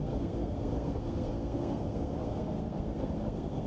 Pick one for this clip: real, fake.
fake